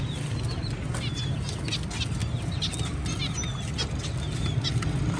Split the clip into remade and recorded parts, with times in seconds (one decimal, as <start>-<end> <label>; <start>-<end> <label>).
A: 0.0-5.2 recorded